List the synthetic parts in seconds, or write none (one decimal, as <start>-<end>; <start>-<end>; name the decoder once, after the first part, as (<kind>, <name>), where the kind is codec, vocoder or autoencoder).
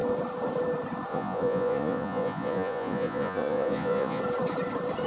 1.1-4.2 (vocoder, Vocos)